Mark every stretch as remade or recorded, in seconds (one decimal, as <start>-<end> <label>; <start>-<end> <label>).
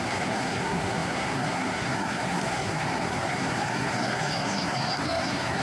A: 0.0-5.6 remade